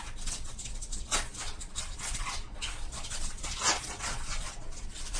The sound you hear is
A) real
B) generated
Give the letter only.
B